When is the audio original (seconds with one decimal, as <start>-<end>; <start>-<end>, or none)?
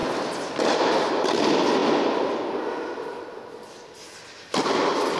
0.0-5.2